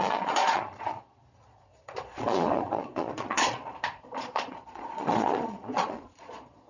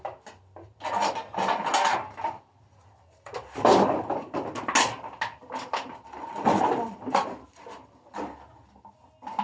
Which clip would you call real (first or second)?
second